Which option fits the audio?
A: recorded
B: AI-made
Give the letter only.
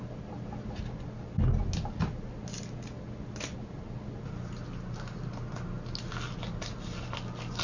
A